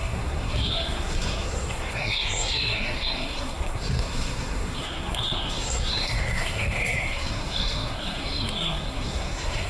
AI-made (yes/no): yes